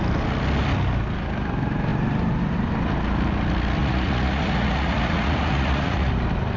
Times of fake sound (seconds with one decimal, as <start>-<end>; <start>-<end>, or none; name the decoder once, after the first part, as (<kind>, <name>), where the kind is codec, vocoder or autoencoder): 3.8-6.1 (vocoder, Vocos)